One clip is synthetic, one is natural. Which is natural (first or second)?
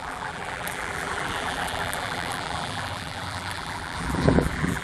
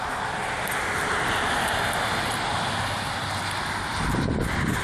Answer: second